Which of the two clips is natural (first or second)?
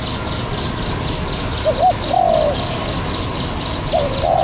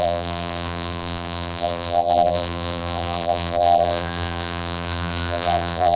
first